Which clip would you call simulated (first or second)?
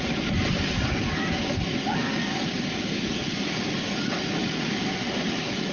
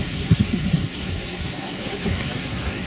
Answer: second